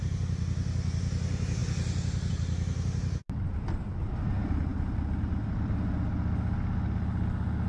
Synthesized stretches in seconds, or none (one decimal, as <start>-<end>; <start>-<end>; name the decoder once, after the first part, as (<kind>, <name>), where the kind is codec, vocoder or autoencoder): none